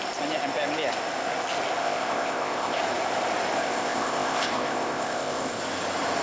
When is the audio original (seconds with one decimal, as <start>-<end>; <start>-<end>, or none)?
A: 0.0-1.8; 2.8-3.6; 5.6-6.2